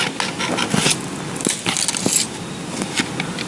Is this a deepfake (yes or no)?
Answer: no